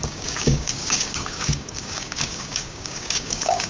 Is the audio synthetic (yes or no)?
yes